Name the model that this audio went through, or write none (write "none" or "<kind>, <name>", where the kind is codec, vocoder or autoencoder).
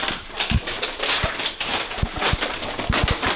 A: none